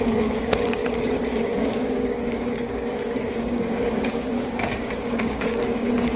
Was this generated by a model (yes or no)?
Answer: yes